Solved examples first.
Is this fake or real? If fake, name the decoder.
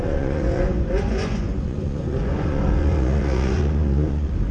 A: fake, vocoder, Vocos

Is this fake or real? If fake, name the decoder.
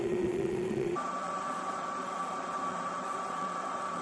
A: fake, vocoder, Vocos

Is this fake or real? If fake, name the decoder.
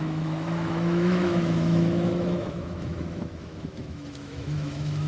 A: fake, autoencoder, DAC-VAE